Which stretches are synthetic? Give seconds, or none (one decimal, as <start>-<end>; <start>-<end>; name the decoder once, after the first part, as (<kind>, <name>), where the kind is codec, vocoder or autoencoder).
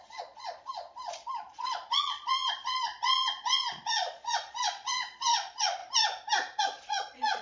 0.0-5.8 (vocoder, Vocos); 6.6-7.4